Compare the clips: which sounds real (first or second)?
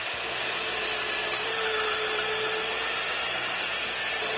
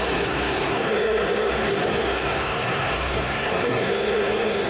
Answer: first